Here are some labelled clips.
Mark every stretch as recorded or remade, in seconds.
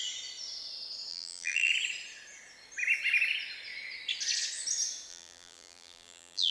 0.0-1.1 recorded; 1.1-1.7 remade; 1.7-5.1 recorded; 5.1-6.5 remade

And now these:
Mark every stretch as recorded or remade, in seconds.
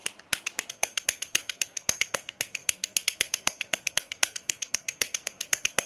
0.0-0.7 recorded; 0.7-5.9 remade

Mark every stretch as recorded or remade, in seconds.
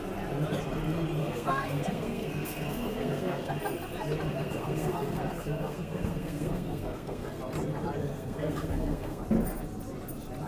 0.0-1.2 recorded; 1.2-3.5 remade; 3.5-4.3 recorded; 4.3-7.4 remade; 7.4-8.0 recorded; 8.0-9.2 remade; 9.2-10.5 recorded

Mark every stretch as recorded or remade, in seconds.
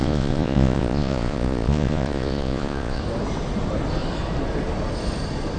0.0-3.0 remade; 3.0-5.6 recorded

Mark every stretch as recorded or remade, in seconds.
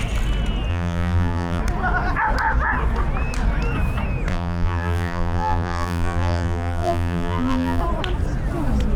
0.0-0.7 recorded; 0.7-1.6 remade; 1.6-4.3 recorded; 4.3-7.8 remade; 7.8-9.0 recorded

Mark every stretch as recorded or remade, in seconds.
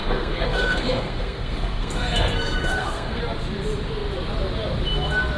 0.0-3.2 remade; 3.2-5.4 recorded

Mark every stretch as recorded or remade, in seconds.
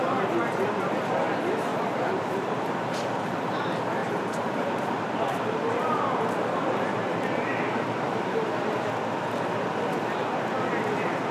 0.0-1.7 recorded; 1.7-3.5 remade; 3.5-4.0 recorded; 4.0-8.9 remade; 8.9-11.3 recorded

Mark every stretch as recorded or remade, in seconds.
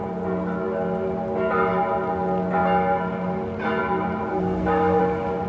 0.0-4.3 recorded; 4.3-5.0 remade; 5.0-5.5 recorded